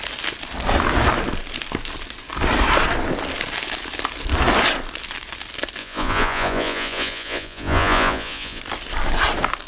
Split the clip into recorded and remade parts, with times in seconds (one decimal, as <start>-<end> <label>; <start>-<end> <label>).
0.0-5.8 recorded; 5.8-8.6 remade; 8.6-9.7 recorded